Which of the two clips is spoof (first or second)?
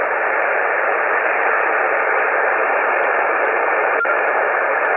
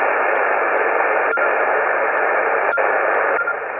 first